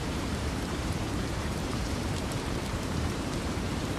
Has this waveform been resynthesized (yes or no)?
yes